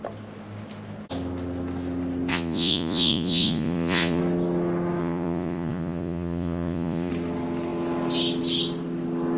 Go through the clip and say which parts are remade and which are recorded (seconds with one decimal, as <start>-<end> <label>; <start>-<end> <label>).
0.0-2.3 recorded; 2.3-4.2 remade; 4.2-5.0 recorded; 5.0-7.1 remade; 7.1-9.4 recorded